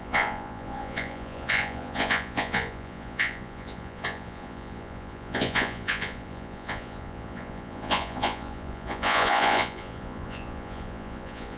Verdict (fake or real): fake